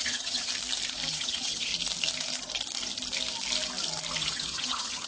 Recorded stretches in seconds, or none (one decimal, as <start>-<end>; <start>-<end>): 0.5-1.1; 1.7-4.2